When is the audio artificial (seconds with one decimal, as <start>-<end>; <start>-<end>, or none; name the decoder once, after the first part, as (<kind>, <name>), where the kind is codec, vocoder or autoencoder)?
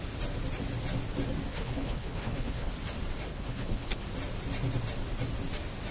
1.5-2.7 (codec, HILCodec); 3.3-4.0